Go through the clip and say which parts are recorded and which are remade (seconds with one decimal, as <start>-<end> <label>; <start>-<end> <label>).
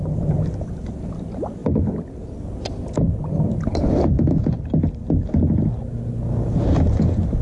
0.0-7.4 recorded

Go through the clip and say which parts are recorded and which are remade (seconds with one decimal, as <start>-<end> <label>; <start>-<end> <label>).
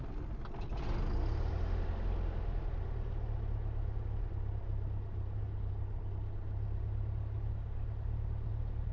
0.0-8.9 recorded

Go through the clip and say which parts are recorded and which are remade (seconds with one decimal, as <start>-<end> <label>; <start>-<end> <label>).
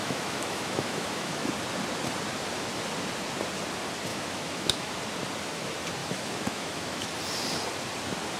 0.0-1.5 remade; 1.5-4.1 recorded; 4.1-4.9 remade; 4.9-6.0 recorded; 6.0-7.1 remade; 7.1-8.4 recorded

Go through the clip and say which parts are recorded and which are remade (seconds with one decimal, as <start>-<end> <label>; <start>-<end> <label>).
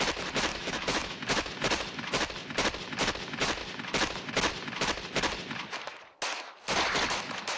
0.0-0.5 recorded; 0.5-1.5 remade; 1.5-7.6 recorded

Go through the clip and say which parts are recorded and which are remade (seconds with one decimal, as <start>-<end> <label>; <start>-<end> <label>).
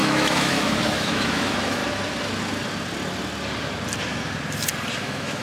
0.0-1.8 remade; 1.8-5.0 recorded; 5.0-5.4 remade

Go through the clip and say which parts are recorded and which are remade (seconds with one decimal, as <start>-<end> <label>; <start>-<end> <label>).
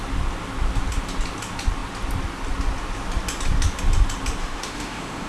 0.0-4.4 recorded; 4.4-5.3 remade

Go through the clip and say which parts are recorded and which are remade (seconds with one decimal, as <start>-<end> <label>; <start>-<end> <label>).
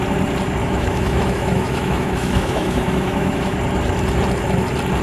0.0-0.6 recorded; 0.6-3.6 remade; 3.6-5.0 recorded